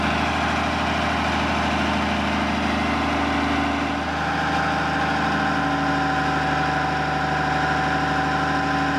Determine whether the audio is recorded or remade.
recorded